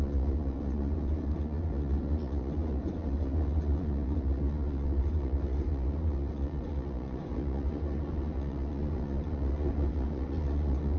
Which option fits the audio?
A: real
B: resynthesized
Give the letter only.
B